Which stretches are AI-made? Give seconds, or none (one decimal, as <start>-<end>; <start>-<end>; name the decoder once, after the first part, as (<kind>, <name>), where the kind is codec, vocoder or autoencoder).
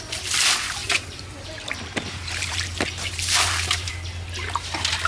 0.8-3.9 (vocoder, BigVGAN v2)